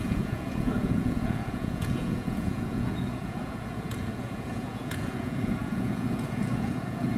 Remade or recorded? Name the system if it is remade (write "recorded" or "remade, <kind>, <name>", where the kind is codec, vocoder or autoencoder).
remade, vocoder, Vocos